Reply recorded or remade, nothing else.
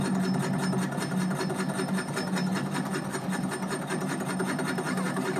recorded